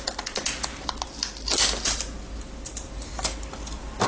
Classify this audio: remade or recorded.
recorded